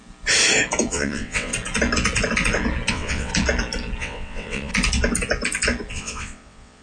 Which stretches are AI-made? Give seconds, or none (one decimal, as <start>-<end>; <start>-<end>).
0.9-1.5; 2.9-3.3; 4.0-4.7; 5.9-6.8